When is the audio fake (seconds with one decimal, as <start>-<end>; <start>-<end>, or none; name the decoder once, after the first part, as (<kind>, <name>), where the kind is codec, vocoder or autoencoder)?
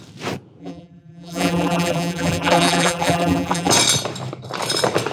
0.6-3.7 (vocoder, BigVGAN v2)